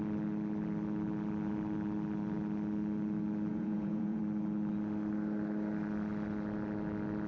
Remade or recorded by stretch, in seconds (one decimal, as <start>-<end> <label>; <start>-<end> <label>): 0.0-3.5 recorded; 3.5-4.2 remade; 4.2-7.3 recorded